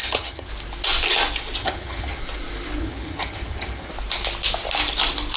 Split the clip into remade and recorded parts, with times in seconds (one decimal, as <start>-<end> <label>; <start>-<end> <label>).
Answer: 0.0-0.5 remade; 0.5-1.6 recorded; 1.6-2.2 remade; 2.2-2.8 recorded; 2.8-3.9 remade; 3.9-5.4 recorded